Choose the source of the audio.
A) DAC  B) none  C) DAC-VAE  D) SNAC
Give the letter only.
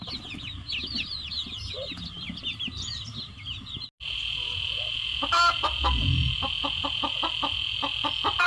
B